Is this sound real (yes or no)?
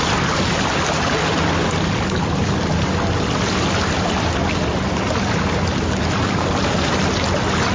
yes